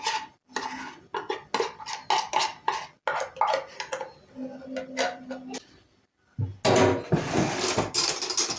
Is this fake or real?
real